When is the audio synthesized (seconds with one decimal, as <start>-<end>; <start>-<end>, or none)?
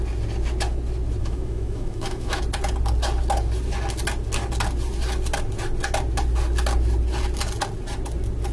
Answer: 1.2-2.4